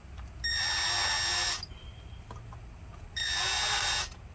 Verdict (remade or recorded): recorded